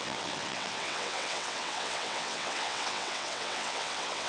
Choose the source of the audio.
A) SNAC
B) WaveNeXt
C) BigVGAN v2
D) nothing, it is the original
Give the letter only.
B